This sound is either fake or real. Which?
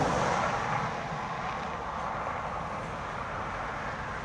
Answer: real